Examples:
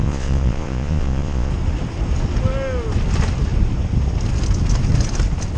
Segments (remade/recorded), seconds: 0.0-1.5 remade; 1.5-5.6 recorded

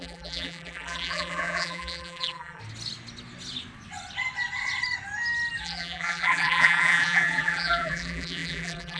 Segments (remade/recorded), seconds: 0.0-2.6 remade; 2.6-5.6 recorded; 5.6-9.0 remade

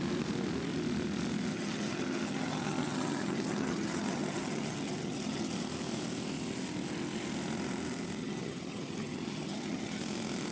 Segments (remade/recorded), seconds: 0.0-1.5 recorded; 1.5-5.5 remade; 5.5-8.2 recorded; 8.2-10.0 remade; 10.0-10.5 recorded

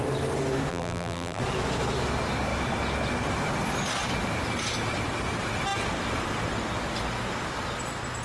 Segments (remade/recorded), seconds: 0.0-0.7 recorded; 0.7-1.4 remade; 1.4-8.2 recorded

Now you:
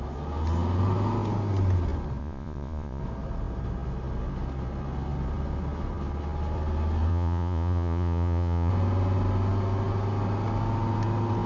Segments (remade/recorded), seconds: 0.0-2.2 recorded; 2.2-3.0 remade; 3.0-7.1 recorded; 7.1-8.7 remade; 8.7-11.5 recorded

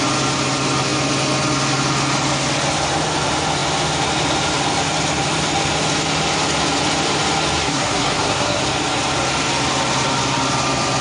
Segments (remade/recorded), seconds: 0.0-7.6 recorded; 7.6-8.6 remade; 8.6-11.0 recorded

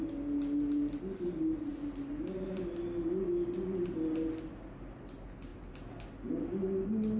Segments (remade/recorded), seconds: 0.0-7.2 recorded